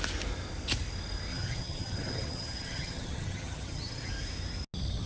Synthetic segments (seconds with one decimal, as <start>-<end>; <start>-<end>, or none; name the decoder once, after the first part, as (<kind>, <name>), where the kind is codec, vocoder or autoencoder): 1.3-4.1 (vocoder, HiFi-GAN)